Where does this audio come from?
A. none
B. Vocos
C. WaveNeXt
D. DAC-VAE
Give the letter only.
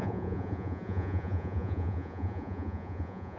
B